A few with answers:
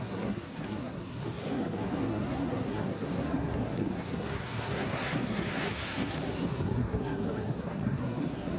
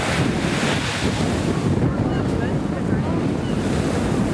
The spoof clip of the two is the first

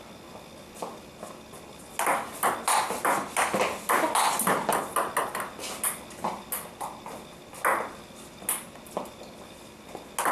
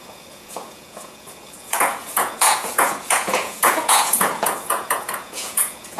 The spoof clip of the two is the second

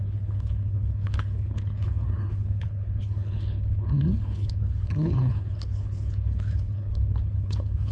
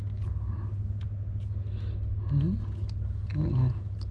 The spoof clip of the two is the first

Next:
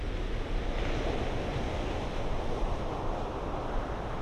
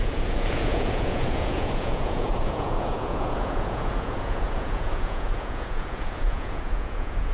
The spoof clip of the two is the second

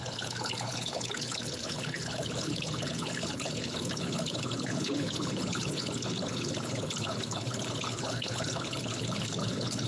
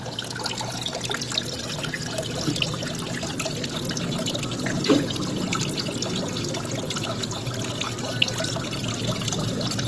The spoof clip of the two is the first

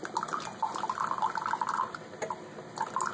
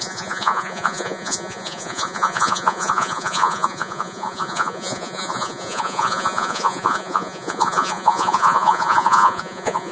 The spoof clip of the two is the second